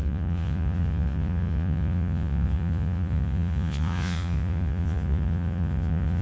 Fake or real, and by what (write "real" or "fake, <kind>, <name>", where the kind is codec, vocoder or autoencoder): fake, vocoder, Vocos